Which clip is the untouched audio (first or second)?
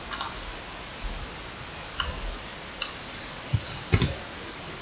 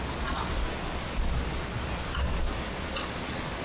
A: first